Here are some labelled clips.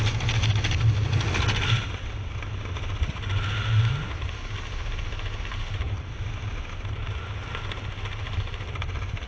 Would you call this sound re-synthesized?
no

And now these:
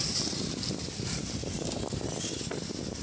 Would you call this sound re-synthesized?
yes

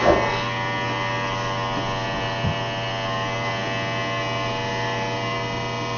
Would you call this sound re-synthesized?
no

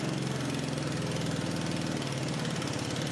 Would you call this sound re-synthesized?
no